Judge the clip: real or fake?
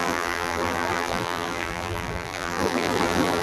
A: fake